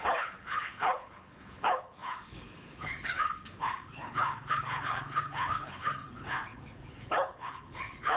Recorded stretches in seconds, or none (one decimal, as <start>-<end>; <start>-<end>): none